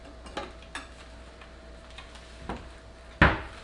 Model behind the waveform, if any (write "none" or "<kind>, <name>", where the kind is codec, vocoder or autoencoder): none